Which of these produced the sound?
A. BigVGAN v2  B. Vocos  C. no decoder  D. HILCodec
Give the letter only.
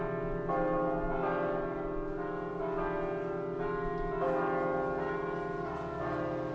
C